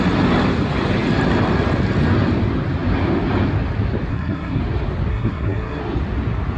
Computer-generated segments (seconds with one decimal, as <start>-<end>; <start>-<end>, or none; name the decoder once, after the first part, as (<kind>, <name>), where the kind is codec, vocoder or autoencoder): 4.1-4.6 (codec, SNAC); 5.1-5.8